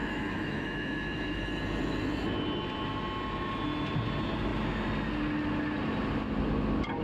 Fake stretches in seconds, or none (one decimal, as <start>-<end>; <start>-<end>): 0.0-1.4